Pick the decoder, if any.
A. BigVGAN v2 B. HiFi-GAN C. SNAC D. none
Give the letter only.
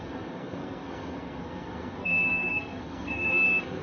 C